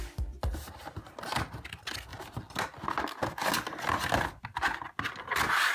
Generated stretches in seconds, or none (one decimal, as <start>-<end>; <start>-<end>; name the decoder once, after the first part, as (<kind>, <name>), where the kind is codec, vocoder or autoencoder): none